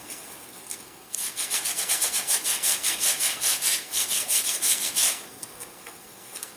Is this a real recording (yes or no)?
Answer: no